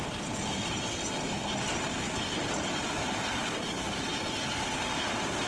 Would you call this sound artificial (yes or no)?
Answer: no